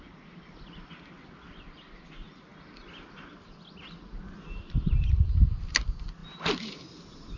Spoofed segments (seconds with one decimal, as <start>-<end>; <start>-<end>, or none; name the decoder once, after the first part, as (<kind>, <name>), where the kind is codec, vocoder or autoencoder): none